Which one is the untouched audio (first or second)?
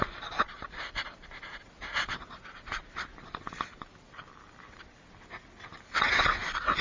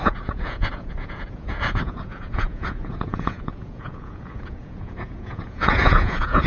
first